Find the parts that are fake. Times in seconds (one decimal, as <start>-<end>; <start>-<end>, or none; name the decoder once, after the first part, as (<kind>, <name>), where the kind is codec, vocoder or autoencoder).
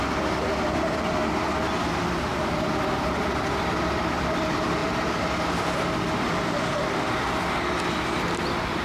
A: 0.0-8.8 (vocoder, BigVGAN v2)